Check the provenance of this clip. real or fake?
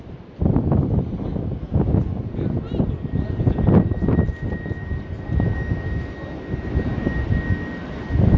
real